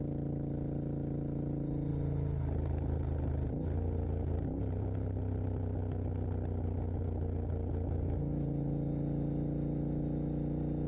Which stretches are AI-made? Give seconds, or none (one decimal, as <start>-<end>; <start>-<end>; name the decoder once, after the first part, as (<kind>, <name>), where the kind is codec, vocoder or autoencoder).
none